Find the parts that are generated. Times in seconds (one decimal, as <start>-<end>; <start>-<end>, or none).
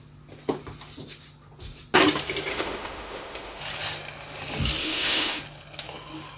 2.5-3.6; 4.8-5.4